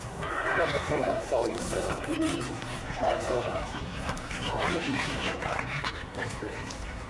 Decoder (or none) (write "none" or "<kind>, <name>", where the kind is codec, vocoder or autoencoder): codec, SNAC